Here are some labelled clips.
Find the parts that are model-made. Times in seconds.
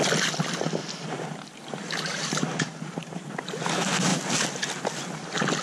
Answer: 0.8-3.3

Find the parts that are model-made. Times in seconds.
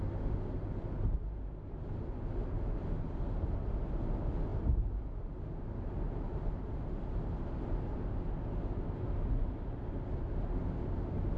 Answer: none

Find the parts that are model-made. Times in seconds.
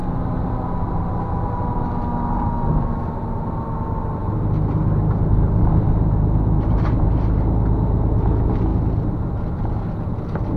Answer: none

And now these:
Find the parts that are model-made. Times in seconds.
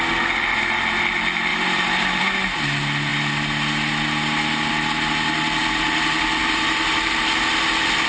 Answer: 1.5-2.2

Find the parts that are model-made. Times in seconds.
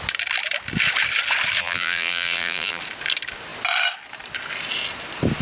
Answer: 1.6-2.8